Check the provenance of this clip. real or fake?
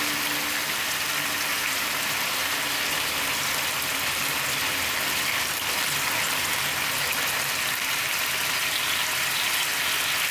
real